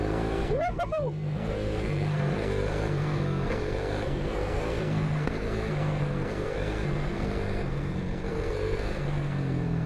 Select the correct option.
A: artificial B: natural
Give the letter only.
A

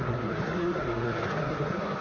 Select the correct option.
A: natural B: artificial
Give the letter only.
B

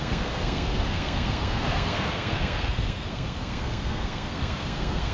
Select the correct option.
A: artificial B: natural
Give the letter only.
A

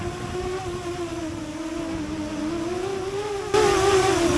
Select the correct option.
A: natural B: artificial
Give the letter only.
A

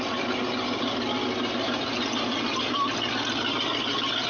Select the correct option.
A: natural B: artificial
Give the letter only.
A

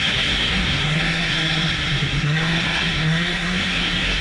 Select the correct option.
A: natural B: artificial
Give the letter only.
B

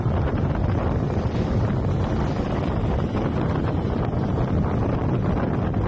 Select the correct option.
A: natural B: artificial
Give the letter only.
A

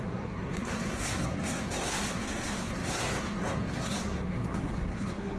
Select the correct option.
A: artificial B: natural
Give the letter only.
A